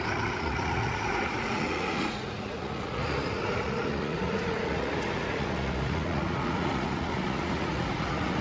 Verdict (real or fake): fake